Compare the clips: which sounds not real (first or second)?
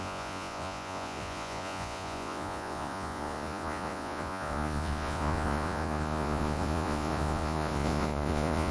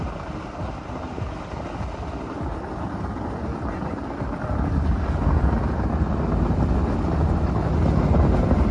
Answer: first